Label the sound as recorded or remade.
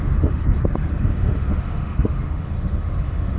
remade